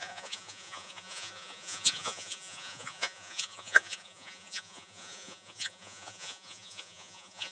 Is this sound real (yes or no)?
no